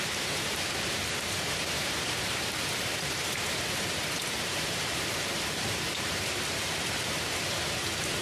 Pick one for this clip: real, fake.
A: fake